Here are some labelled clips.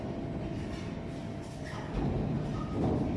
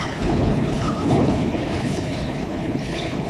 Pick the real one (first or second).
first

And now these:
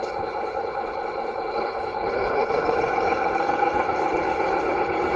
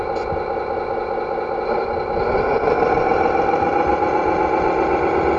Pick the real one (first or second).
second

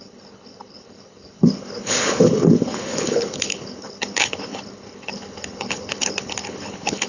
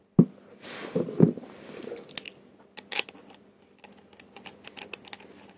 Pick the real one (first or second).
second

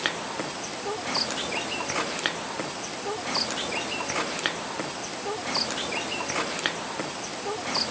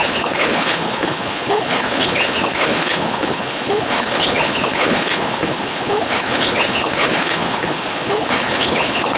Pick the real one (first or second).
first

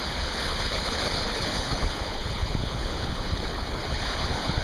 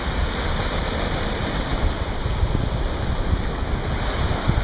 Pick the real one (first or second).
second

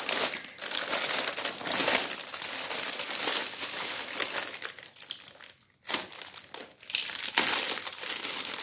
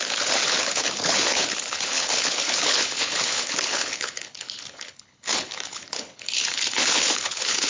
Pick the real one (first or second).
first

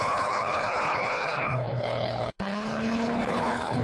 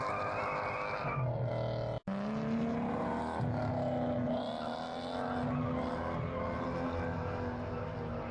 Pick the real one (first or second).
second